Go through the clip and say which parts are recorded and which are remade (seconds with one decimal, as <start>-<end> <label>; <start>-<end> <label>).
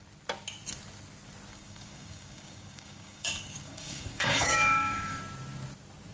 0.0-1.5 recorded; 1.5-5.2 remade; 5.2-6.1 recorded